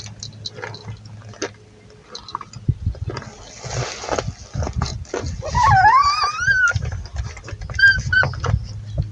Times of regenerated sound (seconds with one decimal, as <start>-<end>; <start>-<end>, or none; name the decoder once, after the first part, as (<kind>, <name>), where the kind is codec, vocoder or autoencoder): none